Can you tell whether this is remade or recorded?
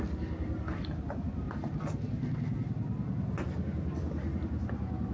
recorded